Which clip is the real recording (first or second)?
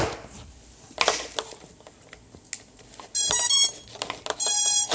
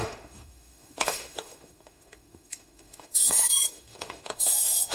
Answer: first